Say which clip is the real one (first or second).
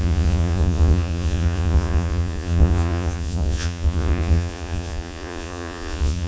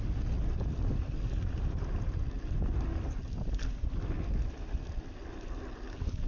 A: second